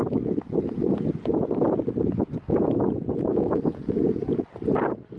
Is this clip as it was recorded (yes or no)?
yes